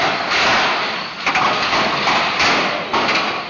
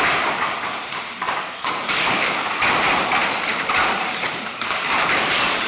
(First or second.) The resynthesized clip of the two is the second